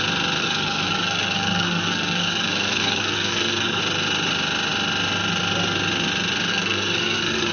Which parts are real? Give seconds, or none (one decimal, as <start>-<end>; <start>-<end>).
0.0-0.4; 3.8-6.5